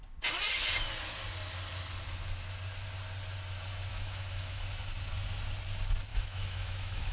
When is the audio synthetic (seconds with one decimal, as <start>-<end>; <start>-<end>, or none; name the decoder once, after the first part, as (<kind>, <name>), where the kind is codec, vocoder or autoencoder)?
3.9-4.6 (autoencoder, DAC-VAE); 6.1-7.1